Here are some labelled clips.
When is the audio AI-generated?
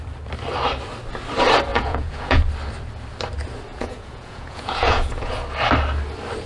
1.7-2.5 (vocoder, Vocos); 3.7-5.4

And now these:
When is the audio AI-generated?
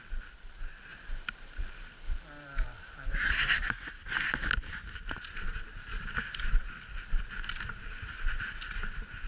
0.9-3.7 (vocoder, BigVGAN v2)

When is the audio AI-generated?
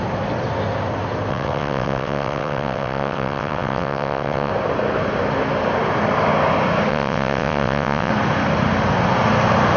1.3-4.5 (vocoder, WaveNeXt); 6.9-8.1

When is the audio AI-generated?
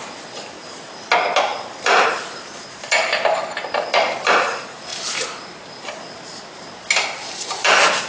none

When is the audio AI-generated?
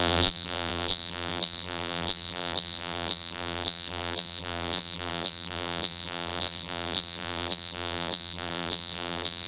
0.0-9.5 (vocoder, BigVGAN v2)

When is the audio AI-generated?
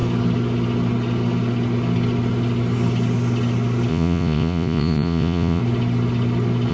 3.9-5.6 (vocoder, Vocos)